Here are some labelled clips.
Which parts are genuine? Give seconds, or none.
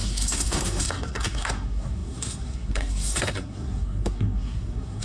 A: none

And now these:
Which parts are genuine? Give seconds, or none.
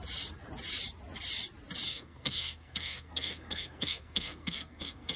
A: 0.0-1.9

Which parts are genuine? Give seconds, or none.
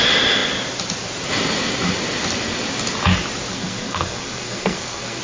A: 0.0-3.5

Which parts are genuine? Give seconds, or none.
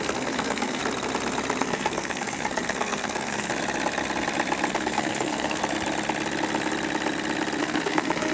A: 0.8-1.6; 3.5-4.7; 5.6-7.6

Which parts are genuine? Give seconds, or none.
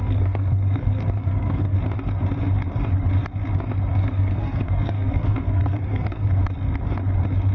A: 1.8-3.9; 6.3-7.5